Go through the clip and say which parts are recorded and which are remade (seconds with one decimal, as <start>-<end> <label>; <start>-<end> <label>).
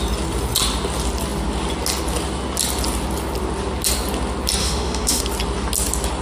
0.0-4.6 recorded; 4.6-5.2 remade; 5.2-6.2 recorded